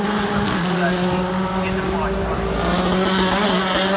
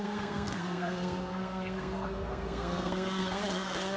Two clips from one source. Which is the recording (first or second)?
first